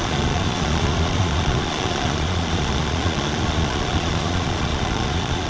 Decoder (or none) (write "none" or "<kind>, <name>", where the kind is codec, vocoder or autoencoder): vocoder, Vocos